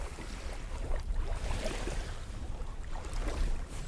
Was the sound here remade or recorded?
remade